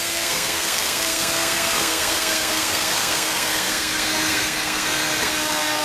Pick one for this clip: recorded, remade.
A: remade